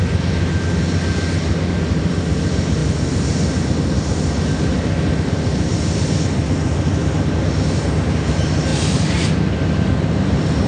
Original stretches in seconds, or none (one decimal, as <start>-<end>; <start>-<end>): 0.0-10.7